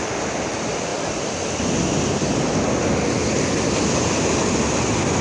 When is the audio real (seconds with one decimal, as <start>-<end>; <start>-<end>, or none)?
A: 0.0-5.2